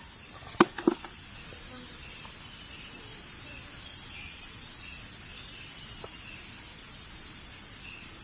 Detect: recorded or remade recorded